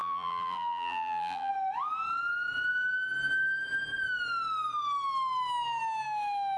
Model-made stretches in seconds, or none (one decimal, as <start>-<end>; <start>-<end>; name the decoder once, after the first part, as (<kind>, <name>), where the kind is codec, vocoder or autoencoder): 0.0-1.5 (vocoder, BigVGAN v2)